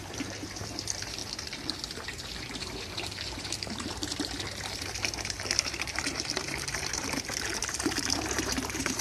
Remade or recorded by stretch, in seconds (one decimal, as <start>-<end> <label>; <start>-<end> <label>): 0.0-9.0 remade